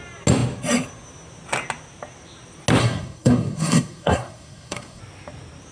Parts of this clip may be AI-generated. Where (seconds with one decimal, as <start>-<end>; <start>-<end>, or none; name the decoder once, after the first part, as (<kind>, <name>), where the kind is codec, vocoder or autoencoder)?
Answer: 2.8-5.0 (codec, SNAC)